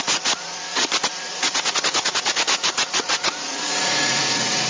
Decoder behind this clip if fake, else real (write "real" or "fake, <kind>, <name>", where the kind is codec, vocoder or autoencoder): fake, vocoder, Vocos